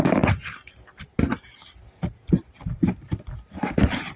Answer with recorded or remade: recorded